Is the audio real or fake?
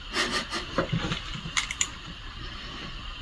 real